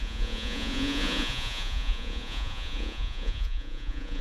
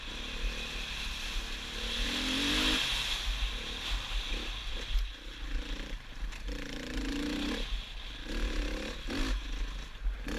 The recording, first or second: second